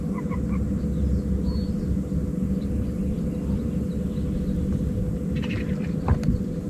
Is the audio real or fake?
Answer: real